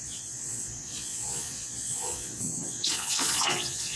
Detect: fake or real fake